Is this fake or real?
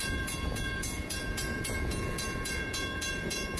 fake